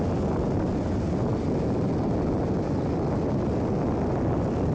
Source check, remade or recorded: recorded